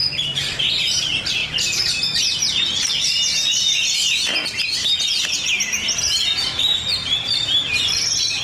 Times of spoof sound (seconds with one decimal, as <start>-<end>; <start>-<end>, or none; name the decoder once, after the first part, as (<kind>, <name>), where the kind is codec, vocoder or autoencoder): 0.0-0.6 (vocoder, BigVGAN v2); 4.8-8.4